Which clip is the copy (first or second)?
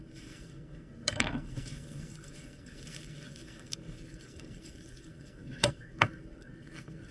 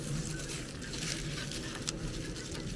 first